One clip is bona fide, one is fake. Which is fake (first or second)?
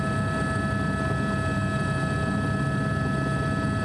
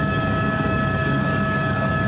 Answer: second